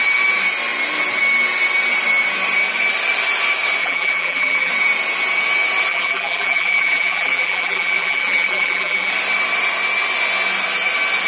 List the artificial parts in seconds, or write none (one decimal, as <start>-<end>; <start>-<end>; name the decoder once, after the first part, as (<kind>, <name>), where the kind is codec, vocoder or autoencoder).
3.8-4.7 (vocoder, BigVGAN v2); 5.9-9.1